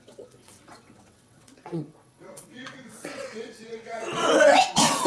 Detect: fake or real fake